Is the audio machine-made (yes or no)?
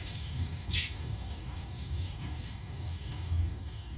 yes